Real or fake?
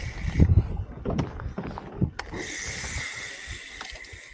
real